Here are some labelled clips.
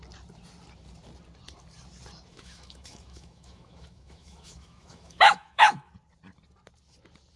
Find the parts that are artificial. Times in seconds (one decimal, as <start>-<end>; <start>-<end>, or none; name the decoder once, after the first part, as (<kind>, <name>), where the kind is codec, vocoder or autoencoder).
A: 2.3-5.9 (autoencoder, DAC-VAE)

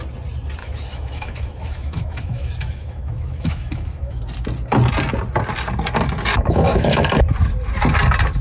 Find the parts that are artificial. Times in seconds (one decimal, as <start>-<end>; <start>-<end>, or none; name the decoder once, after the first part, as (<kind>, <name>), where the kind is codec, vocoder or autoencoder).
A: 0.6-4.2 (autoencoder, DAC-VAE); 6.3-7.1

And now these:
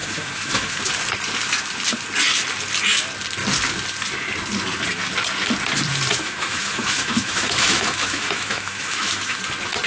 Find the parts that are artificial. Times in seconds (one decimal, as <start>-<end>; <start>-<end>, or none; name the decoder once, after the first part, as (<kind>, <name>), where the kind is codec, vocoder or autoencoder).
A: 0.0-0.9 (autoencoder, DAC-VAE); 6.1-9.4

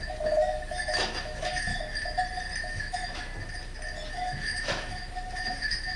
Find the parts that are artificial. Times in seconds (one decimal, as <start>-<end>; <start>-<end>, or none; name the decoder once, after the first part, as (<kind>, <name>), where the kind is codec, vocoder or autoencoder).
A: 0.0-1.7 (autoencoder, DAC-VAE); 2.7-3.3; 4.1-6.0

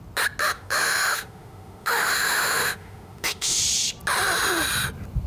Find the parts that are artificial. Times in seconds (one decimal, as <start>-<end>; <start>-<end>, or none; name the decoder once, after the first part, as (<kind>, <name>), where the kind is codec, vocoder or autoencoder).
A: 0.4-3.6 (autoencoder, DAC-VAE)

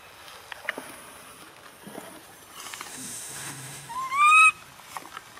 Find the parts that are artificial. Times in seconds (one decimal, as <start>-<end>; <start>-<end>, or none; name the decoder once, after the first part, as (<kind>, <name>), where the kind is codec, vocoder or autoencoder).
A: 2.9-4.0 (autoencoder, DAC-VAE)

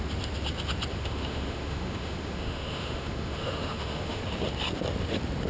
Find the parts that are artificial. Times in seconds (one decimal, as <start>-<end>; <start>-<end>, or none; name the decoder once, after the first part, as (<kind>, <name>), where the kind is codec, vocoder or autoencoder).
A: 0.9-4.2 (autoencoder, DAC-VAE)

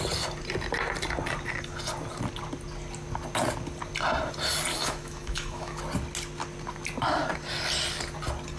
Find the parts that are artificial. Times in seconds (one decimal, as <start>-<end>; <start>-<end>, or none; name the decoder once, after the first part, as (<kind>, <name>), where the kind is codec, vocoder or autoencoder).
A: 4.7-5.8 (autoencoder, DAC-VAE)